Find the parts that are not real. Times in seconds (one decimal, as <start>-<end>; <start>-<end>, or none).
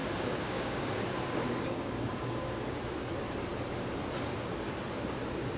0.0-2.6